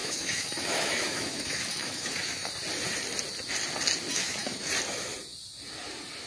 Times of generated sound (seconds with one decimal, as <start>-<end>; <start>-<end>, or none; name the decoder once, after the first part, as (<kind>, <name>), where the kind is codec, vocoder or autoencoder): 0.0-2.5 (autoencoder, DAC-VAE); 4.1-4.7